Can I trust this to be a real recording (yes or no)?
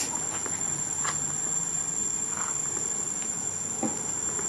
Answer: yes